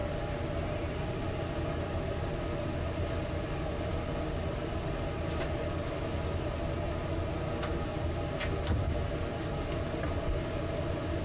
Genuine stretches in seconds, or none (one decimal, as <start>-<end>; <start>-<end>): 0.0-11.2